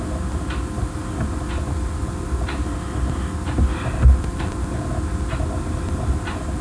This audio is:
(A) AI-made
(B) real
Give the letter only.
B